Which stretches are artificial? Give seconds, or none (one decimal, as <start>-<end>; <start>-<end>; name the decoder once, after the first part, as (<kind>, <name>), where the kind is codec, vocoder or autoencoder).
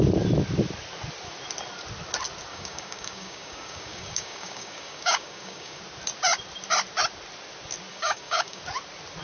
2.5-5.8 (codec, DAC); 7.9-8.6